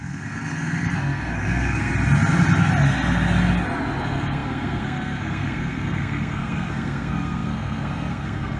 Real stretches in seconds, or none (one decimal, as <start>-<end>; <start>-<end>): 1.9-4.0